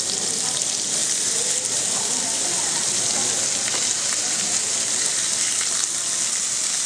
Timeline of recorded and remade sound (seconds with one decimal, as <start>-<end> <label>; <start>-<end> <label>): 0.0-6.9 recorded